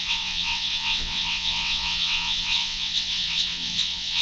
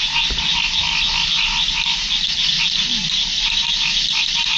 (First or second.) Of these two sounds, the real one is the second